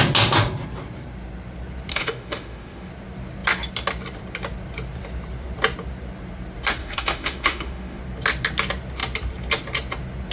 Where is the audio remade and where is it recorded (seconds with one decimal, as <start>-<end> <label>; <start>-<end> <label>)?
0.0-1.9 recorded; 1.9-2.9 remade; 2.9-6.8 recorded; 6.8-8.0 remade; 8.0-10.3 recorded